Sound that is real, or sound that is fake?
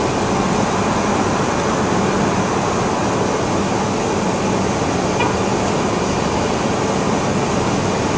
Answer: real